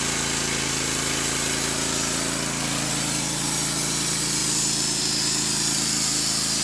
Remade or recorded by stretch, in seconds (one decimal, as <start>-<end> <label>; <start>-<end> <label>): 0.0-6.6 recorded